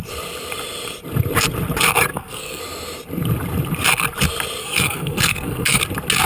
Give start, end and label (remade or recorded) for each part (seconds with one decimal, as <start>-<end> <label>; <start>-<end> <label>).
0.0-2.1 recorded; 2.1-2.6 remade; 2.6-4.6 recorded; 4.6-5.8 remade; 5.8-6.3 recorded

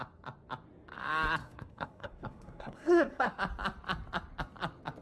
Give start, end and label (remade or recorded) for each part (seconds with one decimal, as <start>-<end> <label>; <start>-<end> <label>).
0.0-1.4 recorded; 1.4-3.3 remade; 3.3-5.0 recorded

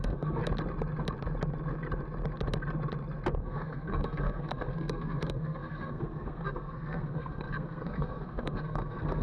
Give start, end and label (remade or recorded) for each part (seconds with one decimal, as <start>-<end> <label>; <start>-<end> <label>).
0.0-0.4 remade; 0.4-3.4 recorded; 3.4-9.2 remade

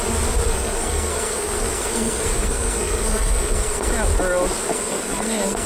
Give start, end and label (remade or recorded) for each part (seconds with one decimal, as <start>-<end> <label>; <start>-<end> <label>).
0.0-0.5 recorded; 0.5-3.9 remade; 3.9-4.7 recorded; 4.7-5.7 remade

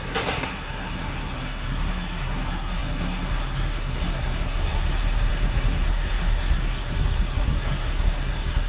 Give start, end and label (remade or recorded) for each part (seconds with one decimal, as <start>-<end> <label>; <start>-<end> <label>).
0.0-8.7 remade

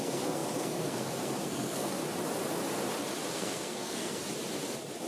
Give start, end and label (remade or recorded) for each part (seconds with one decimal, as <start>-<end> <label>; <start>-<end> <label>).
0.0-2.0 remade; 2.0-3.3 recorded; 3.3-4.2 remade; 4.2-5.1 recorded